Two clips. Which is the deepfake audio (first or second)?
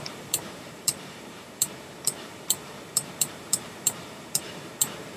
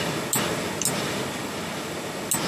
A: first